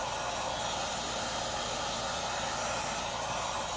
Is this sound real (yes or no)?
yes